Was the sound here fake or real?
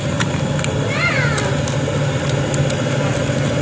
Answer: real